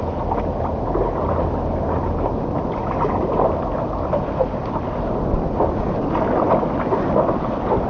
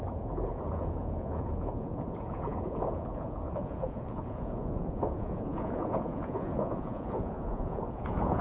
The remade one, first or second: second